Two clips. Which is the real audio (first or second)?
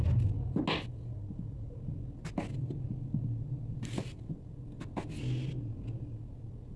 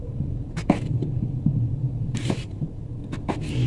first